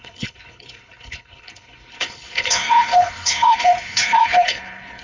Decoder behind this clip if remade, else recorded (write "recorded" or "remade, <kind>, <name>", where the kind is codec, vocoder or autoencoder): remade, codec, HILCodec